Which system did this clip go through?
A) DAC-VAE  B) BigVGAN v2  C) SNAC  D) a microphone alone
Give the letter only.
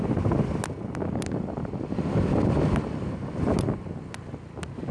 D